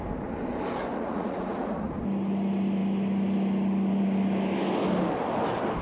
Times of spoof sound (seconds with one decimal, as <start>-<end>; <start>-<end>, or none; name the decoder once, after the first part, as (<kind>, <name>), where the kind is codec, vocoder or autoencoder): 0.9-2.0 (vocoder, Vocos)